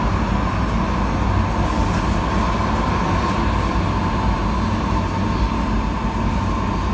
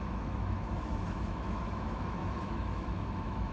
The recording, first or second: first